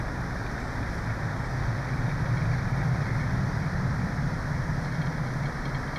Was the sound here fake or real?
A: real